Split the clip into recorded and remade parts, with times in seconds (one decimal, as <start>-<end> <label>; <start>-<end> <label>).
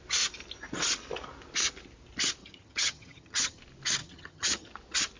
0.0-2.4 recorded; 2.4-3.6 remade; 3.6-4.0 recorded; 4.0-4.7 remade; 4.7-5.2 recorded